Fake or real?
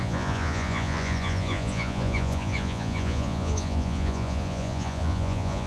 fake